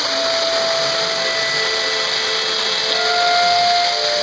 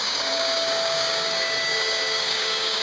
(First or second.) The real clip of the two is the first